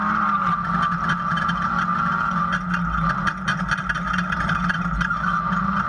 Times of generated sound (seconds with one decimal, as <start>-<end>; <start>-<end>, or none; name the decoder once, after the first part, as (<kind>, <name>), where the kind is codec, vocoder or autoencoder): none